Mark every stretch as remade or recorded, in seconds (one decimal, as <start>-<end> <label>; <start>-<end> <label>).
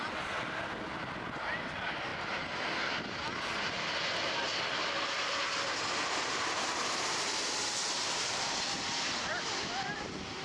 0.0-10.4 recorded